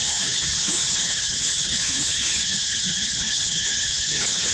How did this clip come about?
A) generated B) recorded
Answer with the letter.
A